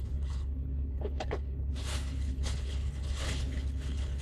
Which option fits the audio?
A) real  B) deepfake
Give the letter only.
B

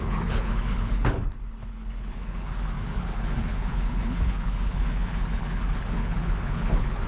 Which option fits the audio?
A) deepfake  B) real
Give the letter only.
A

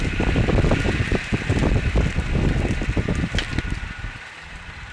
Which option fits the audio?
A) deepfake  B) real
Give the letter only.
B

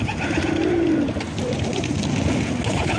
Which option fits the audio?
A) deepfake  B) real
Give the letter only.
B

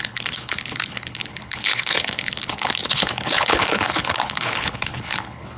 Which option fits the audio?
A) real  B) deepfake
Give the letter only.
B